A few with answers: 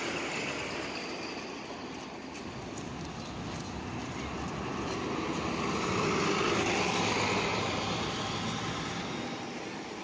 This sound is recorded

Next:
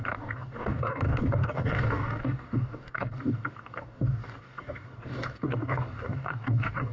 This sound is remade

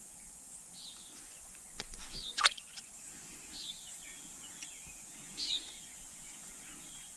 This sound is remade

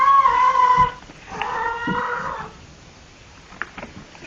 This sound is recorded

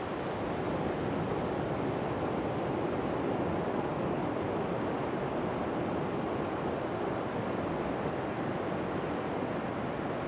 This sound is recorded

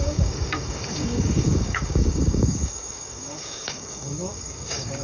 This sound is remade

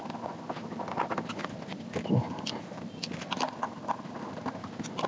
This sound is recorded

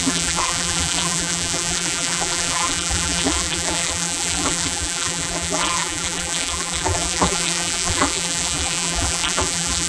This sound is remade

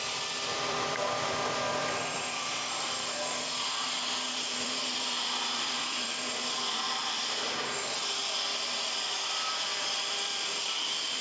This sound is remade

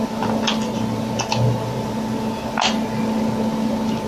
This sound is recorded